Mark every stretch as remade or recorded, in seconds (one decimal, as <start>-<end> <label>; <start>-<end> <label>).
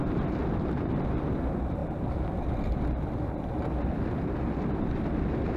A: 0.0-5.6 recorded